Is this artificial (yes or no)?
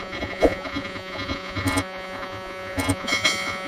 yes